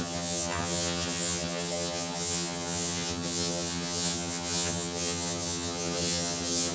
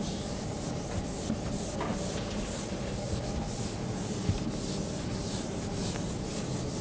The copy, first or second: first